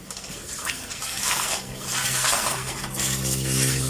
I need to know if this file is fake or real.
fake